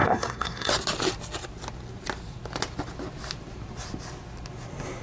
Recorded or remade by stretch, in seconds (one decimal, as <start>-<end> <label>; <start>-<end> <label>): 0.0-0.7 remade; 0.7-5.0 recorded